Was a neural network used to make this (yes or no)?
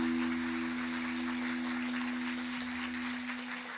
no